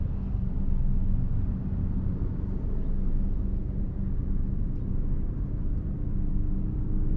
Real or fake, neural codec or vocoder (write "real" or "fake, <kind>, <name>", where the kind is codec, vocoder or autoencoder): real